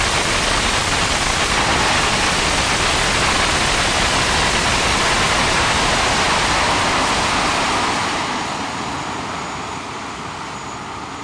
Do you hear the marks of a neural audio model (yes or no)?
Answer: no